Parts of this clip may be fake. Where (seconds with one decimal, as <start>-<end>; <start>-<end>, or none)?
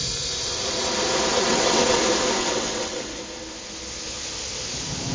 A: 1.3-2.0; 2.4-3.2